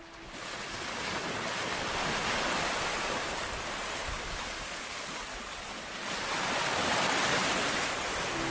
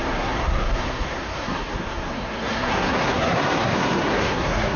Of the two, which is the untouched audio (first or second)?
first